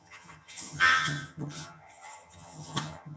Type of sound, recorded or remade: remade